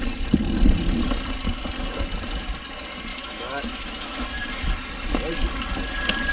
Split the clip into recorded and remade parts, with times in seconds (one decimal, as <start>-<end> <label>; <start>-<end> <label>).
0.0-3.1 recorded; 3.1-4.2 remade; 4.2-6.3 recorded